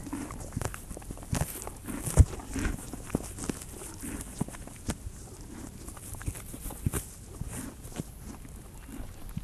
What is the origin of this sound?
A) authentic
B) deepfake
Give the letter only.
A